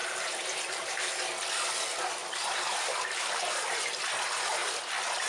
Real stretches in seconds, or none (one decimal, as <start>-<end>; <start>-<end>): 1.1-2.2; 3.6-5.3